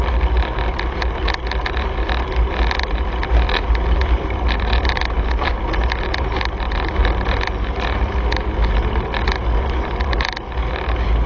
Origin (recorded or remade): recorded